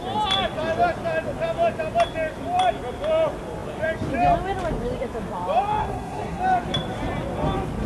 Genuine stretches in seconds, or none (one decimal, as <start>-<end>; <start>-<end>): 0.0-5.8; 6.4-7.9